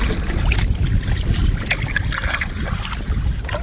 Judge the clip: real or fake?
real